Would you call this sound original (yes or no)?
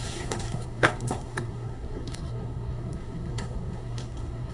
no